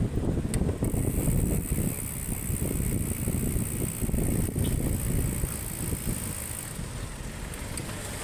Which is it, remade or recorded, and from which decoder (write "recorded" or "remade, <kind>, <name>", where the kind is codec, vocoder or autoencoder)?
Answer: recorded